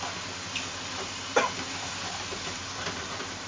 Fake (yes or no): no